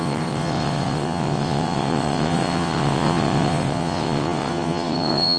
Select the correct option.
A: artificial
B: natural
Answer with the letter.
A